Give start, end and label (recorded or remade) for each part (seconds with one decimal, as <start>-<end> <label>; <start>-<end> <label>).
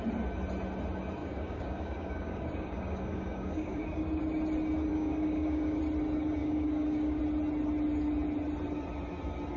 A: 0.0-1.2 recorded; 1.2-4.2 remade; 4.2-4.9 recorded; 4.9-5.8 remade; 5.8-6.4 recorded; 6.4-7.2 remade; 7.2-9.6 recorded